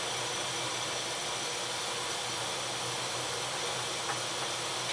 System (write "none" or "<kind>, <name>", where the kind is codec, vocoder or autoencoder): none